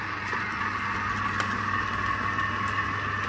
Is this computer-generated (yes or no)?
no